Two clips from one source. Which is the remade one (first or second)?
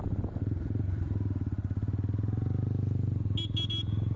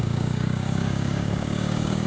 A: second